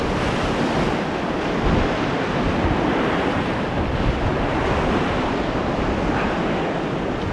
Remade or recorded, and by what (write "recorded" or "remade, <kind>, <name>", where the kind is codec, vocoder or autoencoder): recorded